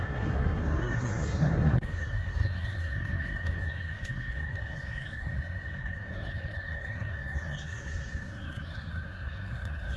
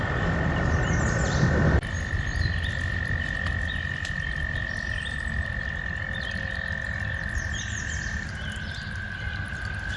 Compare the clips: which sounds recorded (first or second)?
second